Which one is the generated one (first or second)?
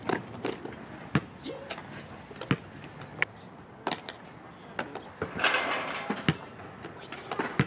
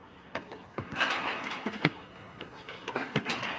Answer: second